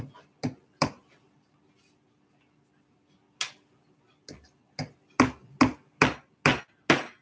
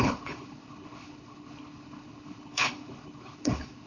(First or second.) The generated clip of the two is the second